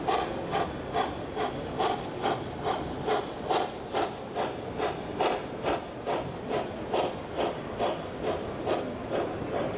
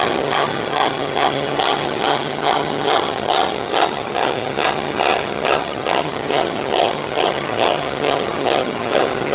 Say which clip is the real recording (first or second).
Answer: first